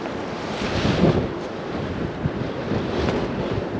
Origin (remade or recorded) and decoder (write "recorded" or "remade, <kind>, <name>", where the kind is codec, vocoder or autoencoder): recorded